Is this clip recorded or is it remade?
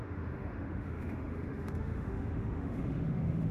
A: remade